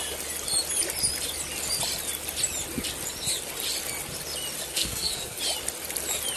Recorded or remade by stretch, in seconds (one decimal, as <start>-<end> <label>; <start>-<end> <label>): 0.0-4.7 recorded; 4.7-5.4 remade; 5.4-6.4 recorded